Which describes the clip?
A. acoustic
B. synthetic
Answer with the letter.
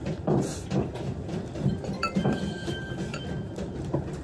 B